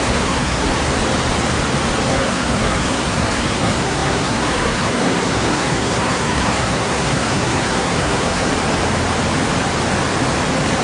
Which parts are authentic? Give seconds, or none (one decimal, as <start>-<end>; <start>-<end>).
0.7-2.1; 8.5-10.8